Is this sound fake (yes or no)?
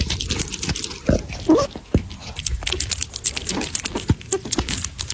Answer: no